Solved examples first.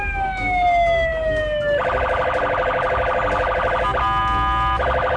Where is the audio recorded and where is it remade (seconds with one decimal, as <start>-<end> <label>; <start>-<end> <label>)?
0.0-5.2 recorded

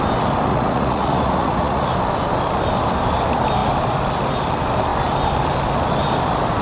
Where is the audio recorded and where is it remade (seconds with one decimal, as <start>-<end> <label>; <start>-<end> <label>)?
0.0-0.5 recorded; 0.5-1.9 remade; 1.9-6.6 recorded

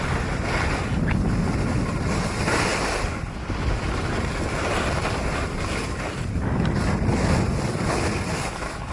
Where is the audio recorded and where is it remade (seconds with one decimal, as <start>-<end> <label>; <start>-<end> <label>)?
0.0-8.9 recorded

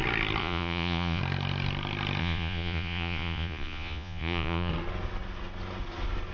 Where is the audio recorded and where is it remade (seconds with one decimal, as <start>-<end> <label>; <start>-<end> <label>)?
0.0-0.4 recorded; 0.4-1.2 remade; 1.2-2.2 recorded; 2.2-4.7 remade; 4.7-6.3 recorded

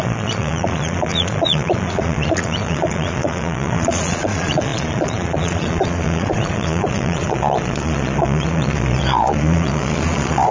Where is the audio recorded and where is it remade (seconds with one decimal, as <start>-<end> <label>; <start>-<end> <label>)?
0.0-10.5 remade

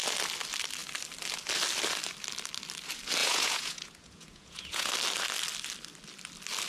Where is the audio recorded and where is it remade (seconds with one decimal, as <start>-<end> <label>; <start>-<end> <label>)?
0.0-3.2 recorded; 3.2-4.9 remade; 4.9-6.7 recorded

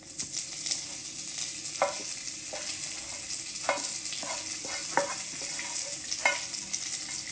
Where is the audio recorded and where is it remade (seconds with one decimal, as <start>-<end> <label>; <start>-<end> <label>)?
0.0-7.3 recorded

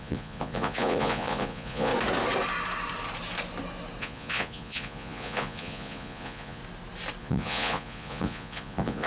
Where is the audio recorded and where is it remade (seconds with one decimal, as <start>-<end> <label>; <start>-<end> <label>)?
0.0-1.9 remade; 1.9-4.0 recorded; 4.0-6.6 remade; 6.6-7.2 recorded; 7.2-9.1 remade